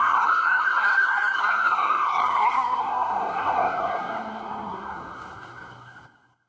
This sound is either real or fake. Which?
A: fake